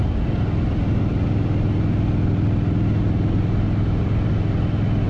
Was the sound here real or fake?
real